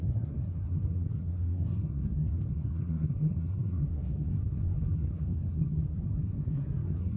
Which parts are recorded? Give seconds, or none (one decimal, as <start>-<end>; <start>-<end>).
none